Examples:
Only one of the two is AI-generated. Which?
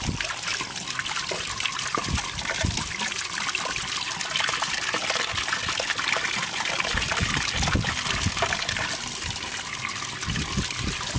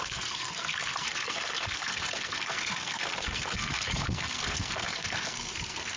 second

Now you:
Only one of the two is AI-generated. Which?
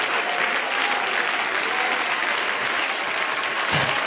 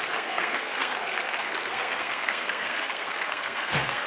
second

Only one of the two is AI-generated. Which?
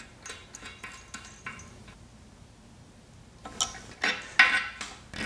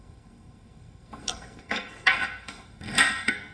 second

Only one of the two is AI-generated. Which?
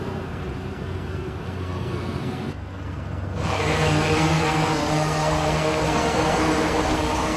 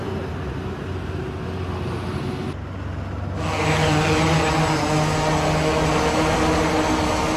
first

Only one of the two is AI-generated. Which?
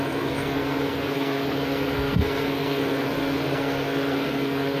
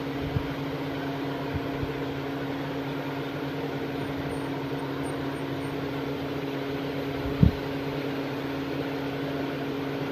first